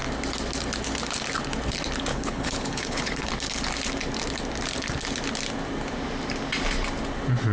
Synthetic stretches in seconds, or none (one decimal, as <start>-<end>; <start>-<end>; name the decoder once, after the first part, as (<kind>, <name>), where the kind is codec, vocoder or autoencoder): 2.1-3.3 (codec, HILCodec)